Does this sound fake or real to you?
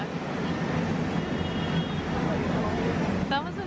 real